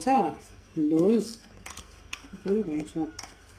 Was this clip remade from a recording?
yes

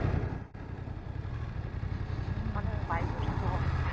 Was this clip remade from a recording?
no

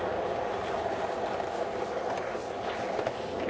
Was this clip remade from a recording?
no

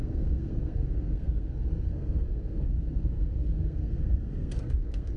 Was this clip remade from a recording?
yes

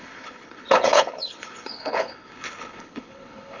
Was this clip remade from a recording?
yes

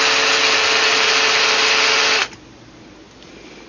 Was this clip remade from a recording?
no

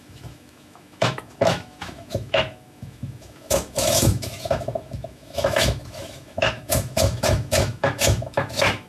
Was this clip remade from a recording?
yes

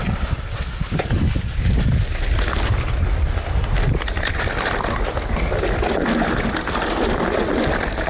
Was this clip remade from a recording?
no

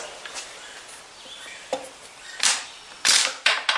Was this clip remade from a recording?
no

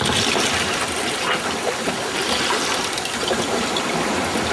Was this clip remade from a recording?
no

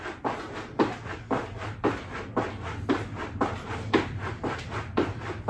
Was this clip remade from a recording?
no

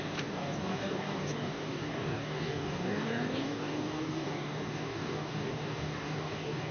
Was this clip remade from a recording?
yes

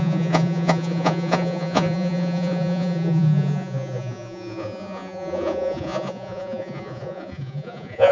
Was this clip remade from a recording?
yes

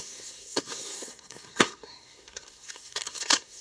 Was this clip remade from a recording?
yes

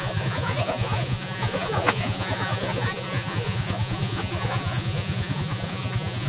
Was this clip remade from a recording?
yes